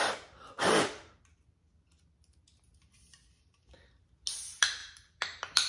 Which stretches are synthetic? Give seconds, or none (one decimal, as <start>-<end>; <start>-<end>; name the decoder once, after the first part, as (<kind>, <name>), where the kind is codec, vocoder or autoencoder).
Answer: 0.0-1.1 (vocoder, BigVGAN v2); 4.8-5.7